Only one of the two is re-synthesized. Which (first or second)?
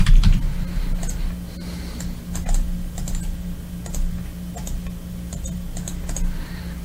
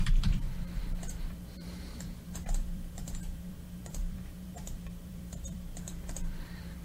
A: second